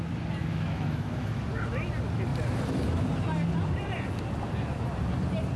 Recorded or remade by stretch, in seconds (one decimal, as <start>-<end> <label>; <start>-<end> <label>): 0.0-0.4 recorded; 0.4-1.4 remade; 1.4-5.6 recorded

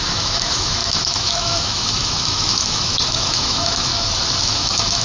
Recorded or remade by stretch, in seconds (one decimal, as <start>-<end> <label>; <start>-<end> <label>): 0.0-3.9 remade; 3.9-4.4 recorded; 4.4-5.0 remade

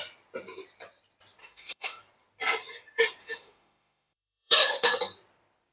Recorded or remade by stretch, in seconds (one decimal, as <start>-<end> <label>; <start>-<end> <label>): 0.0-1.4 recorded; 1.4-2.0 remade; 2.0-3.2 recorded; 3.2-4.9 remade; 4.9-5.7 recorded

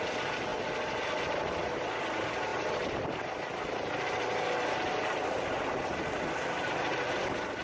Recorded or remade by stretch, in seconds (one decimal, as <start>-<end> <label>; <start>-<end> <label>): 0.0-7.6 recorded